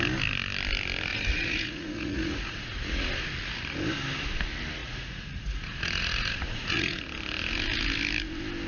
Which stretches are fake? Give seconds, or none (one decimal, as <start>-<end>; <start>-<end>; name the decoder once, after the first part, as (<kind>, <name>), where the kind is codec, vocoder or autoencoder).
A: 1.1-3.1 (vocoder, Vocos); 4.8-7.0